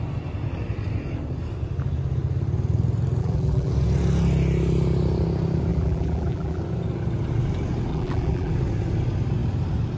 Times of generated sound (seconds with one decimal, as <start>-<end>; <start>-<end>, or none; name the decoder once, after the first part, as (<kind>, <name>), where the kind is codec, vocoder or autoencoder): 3.2-3.7 (vocoder, BigVGAN v2); 5.7-6.6; 7.9-8.5